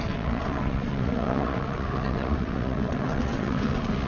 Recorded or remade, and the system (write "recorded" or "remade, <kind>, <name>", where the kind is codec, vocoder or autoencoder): remade, vocoder, WaveNeXt